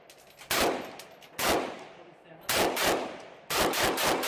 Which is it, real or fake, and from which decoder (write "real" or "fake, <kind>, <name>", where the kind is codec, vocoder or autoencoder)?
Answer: real